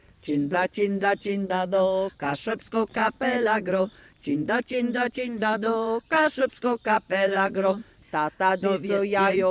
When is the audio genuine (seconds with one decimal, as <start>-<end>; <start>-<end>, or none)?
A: 3.0-5.1; 7.8-8.5